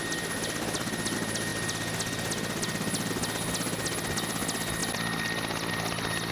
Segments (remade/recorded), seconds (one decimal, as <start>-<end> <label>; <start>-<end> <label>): 0.0-6.3 recorded